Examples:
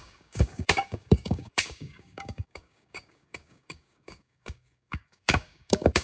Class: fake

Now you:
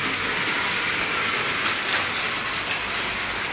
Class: real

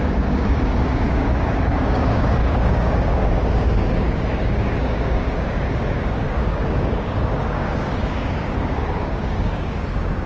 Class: fake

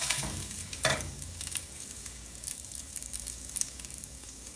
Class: fake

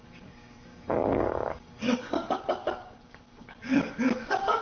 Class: fake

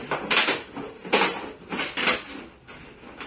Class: real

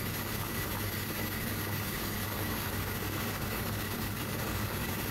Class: fake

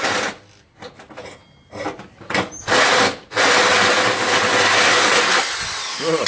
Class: real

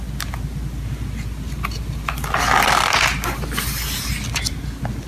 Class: real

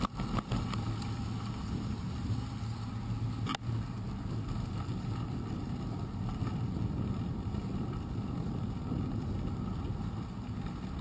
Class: real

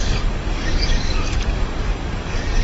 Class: fake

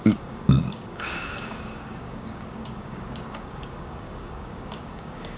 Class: fake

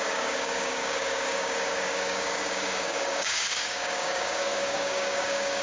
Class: fake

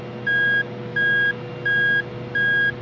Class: real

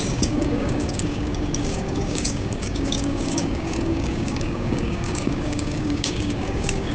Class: fake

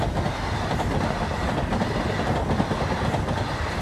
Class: real